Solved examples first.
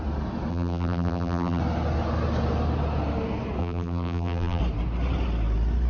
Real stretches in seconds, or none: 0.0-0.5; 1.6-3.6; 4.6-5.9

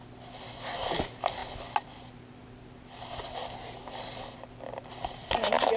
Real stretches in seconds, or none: 0.0-5.8

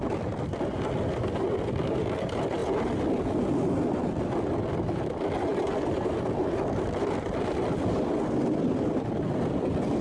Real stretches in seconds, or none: 0.0-5.5; 6.7-10.0

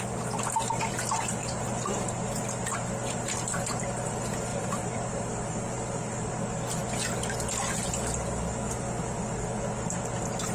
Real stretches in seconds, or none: 0.0-1.4; 2.1-4.5; 6.3-10.5

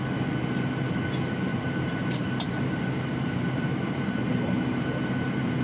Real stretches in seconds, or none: 0.0-1.5; 4.9-5.6